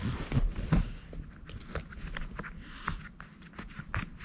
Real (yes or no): yes